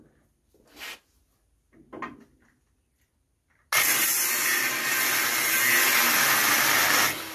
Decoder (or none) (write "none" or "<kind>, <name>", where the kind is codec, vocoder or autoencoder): none